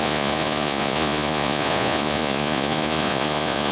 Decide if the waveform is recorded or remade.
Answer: remade